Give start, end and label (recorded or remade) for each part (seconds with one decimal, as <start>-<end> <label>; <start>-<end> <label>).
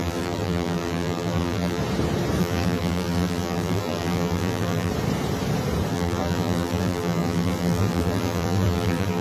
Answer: 0.0-1.8 remade; 1.8-2.4 recorded; 2.4-4.9 remade; 4.9-5.9 recorded; 5.9-9.2 remade